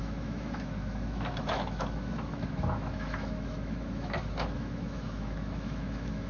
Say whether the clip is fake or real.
fake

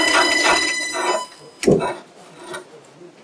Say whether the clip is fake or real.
real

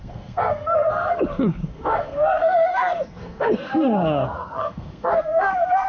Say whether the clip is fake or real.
fake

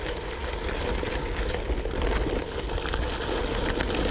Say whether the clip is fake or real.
real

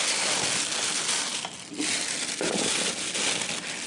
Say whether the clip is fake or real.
real